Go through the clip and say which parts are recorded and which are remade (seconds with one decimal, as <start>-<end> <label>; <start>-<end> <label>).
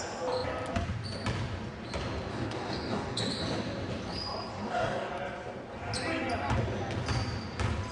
0.0-2.3 recorded; 2.3-3.2 remade; 3.2-4.5 recorded; 4.5-5.1 remade; 5.1-7.9 recorded